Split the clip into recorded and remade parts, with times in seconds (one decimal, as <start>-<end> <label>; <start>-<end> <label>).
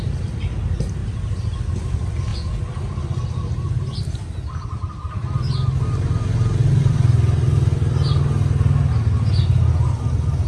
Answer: 0.0-10.5 recorded